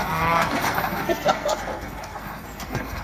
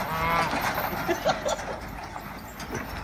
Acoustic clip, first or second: second